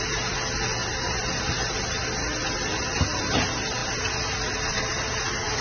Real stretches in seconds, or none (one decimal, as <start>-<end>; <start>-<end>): 0.0-0.8; 1.4-5.6